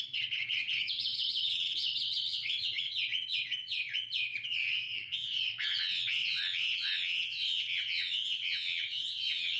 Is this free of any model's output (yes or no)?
no